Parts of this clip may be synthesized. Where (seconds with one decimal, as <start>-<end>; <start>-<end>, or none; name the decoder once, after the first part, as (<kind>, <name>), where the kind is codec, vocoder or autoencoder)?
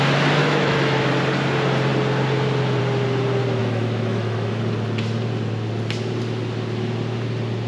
0.4-1.0 (autoencoder, DAC-VAE); 3.6-4.6